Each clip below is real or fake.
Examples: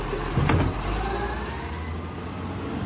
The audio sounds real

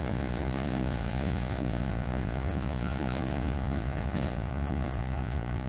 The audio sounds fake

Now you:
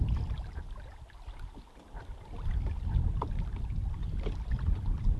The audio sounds real